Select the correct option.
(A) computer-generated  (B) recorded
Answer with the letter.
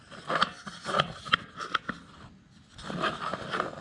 B